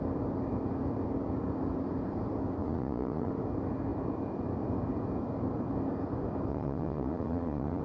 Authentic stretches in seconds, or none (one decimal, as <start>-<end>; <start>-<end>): 0.0-2.6; 3.3-6.5